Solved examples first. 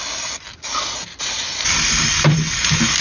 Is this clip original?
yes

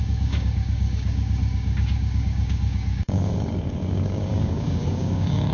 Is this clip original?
no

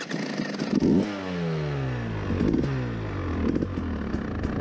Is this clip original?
yes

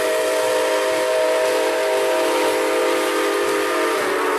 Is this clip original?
yes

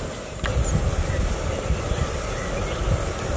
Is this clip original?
yes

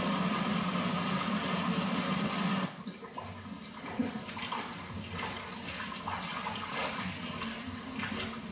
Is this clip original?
yes